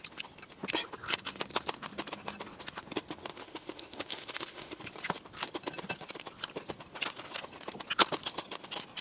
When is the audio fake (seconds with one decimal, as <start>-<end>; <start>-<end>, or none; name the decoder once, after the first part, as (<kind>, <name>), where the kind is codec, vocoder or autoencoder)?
3.3-4.8 (autoencoder, DAC-VAE)

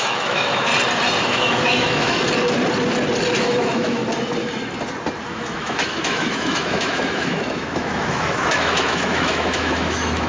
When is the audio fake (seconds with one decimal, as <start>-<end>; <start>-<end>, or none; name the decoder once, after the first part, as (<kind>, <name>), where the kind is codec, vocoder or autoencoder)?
0.0-0.7 (autoencoder, DAC-VAE); 1.3-2.2; 3.4-4.0; 5.2-10.3